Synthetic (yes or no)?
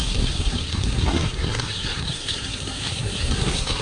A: yes